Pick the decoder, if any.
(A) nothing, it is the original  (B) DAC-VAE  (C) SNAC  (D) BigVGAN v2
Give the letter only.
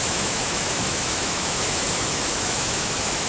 B